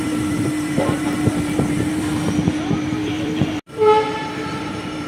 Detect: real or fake fake